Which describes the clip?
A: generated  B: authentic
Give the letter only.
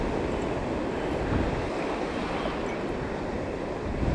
B